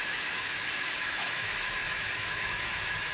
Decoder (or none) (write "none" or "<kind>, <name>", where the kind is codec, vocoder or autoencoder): autoencoder, DAC-VAE